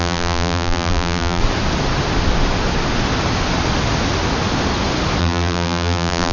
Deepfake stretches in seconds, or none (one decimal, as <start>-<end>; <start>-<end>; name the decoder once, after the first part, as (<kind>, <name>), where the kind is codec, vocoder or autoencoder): 0.0-1.4 (vocoder, BigVGAN v2); 5.2-6.3